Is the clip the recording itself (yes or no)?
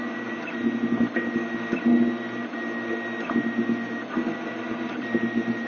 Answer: yes